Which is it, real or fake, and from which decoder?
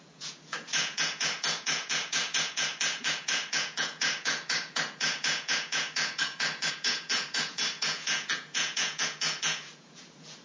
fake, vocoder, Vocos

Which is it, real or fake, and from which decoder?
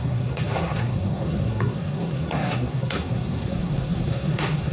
fake, codec, SNAC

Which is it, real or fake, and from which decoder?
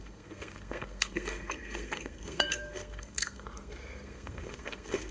fake, codec, SNAC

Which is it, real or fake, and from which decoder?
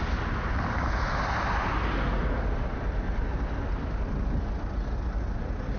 real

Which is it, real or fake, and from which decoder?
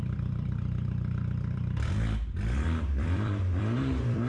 fake, vocoder, BigVGAN v2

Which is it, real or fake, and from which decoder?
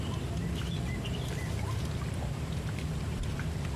real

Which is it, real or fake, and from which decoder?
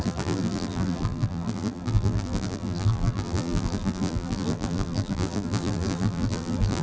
fake, vocoder, BigVGAN v2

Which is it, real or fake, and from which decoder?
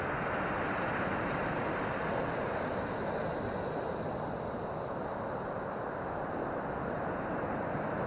real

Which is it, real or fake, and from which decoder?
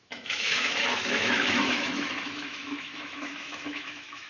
fake, autoencoder, DAC-VAE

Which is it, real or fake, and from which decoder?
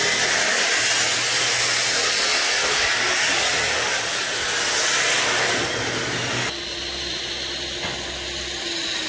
real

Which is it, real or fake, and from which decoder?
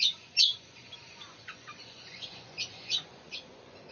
fake, vocoder, Vocos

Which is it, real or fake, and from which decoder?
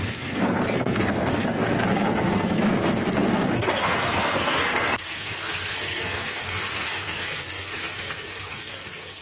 fake, codec, SNAC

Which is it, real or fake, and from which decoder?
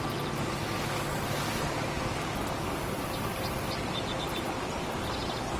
real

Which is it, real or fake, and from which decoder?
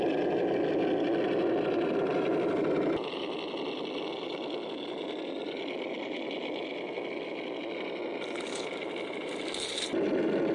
real